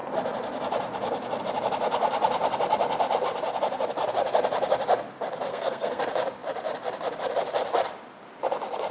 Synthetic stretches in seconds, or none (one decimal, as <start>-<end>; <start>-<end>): 5.5-6.0